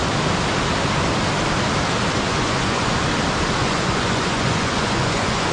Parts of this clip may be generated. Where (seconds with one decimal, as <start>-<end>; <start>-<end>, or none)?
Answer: 2.3-3.0; 3.6-5.5